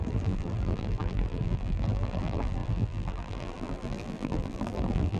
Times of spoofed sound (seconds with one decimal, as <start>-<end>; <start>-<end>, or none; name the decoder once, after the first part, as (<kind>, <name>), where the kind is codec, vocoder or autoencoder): 0.0-5.2 (vocoder, BigVGAN v2)